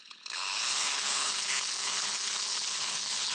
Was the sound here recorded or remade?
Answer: remade